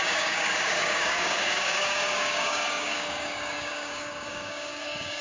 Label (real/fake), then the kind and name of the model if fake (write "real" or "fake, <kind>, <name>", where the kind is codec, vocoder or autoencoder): fake, codec, DAC